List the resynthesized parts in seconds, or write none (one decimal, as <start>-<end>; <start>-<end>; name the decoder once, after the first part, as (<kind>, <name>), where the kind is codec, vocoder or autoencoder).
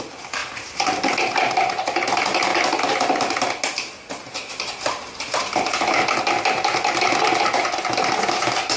none